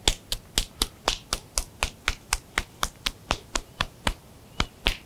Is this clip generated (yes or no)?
no